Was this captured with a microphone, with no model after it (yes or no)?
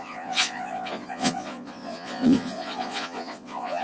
no